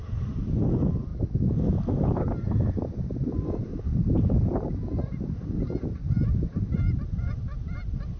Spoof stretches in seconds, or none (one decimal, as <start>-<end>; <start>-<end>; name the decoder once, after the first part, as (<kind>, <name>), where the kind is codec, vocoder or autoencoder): none